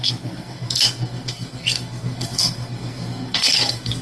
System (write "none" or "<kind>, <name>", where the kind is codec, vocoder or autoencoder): codec, SNAC